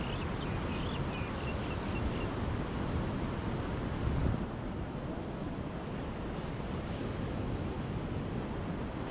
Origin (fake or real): real